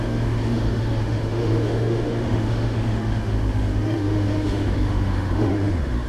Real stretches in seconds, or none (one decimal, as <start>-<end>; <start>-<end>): none

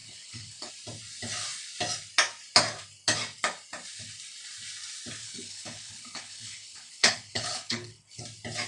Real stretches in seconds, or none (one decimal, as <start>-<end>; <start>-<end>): 0.7-5.2; 8.2-8.7

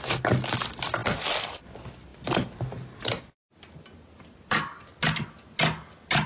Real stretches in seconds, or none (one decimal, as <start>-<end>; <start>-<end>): 0.0-6.3

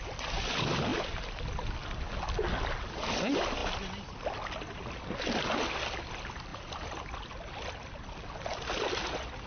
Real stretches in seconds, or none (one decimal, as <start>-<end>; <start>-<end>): 0.0-9.5

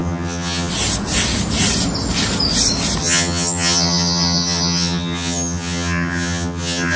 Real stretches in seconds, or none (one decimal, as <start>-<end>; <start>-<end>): 0.7-3.0

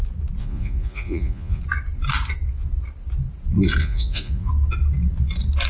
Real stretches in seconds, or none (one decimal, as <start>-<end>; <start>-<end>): 0.0-0.4; 1.6-3.8; 4.5-5.7

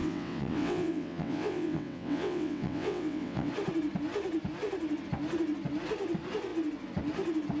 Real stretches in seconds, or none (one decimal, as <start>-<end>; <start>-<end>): 3.5-7.6

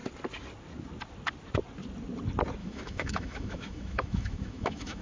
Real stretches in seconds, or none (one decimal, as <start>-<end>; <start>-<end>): 0.0-2.6